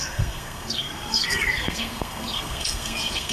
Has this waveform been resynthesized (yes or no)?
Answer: yes